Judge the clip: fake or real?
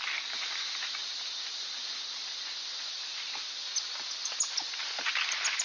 real